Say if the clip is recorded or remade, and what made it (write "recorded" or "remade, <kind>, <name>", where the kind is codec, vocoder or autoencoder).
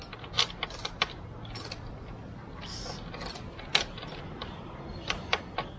recorded